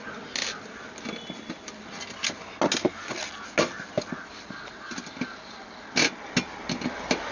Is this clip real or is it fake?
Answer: real